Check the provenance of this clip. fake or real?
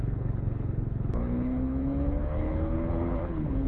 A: fake